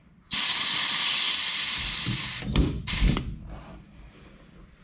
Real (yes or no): no